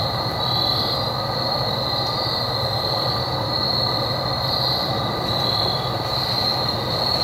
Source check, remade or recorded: recorded